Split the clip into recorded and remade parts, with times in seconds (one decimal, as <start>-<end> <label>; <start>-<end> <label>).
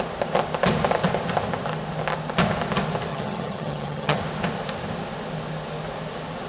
0.0-3.1 recorded; 3.1-4.2 remade; 4.2-6.5 recorded